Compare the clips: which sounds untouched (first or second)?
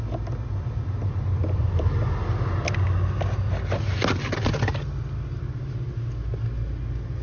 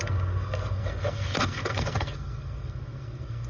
first